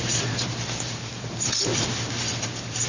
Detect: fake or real real